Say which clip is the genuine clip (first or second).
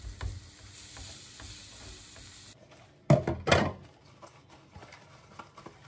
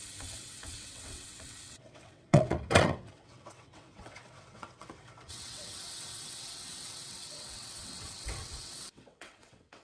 first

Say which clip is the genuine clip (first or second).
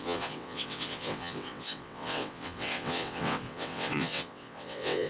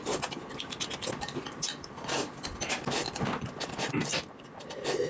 second